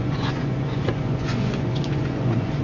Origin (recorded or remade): remade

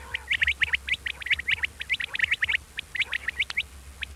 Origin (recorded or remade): recorded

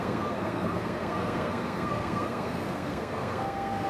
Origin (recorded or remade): remade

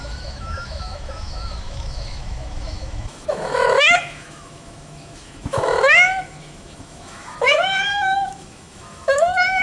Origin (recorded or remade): remade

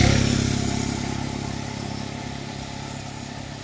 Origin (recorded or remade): recorded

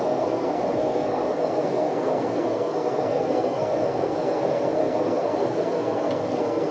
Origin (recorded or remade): remade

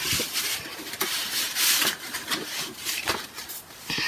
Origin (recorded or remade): remade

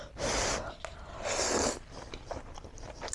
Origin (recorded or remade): recorded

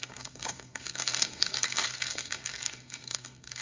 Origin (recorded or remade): remade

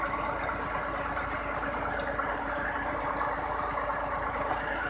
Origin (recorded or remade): recorded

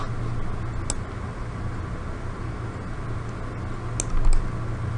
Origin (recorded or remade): recorded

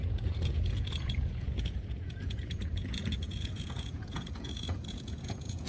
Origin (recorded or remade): remade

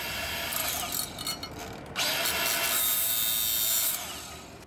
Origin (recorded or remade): recorded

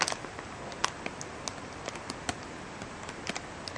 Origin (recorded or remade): recorded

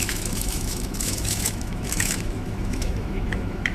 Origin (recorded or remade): remade